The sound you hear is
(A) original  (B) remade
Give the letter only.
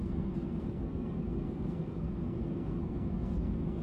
B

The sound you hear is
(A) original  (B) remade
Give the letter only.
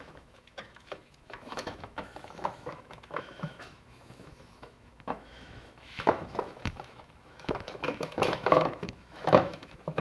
B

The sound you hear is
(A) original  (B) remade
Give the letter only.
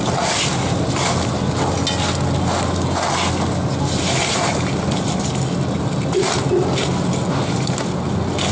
A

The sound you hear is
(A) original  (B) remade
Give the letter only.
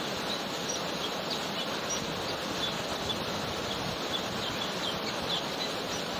A